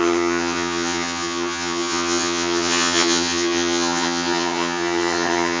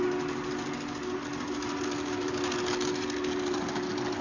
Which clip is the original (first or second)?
second